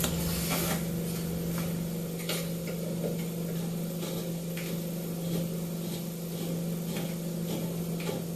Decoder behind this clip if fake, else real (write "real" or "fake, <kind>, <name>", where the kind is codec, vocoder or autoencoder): real